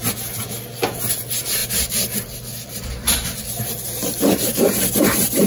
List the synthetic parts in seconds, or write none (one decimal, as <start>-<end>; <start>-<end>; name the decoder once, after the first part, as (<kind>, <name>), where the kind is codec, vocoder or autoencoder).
none